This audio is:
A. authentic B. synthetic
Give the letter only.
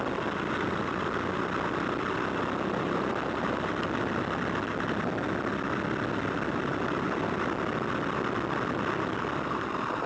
A